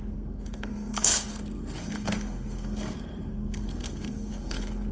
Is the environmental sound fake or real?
fake